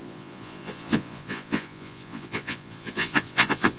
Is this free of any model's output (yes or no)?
no